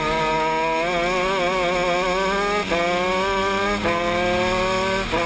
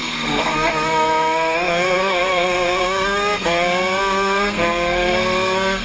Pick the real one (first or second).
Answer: first